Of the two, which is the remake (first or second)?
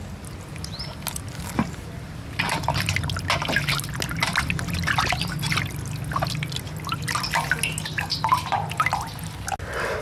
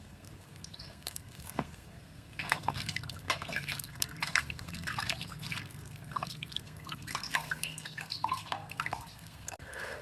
second